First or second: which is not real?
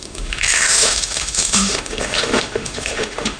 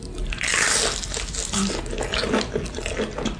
first